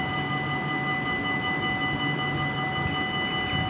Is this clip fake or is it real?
real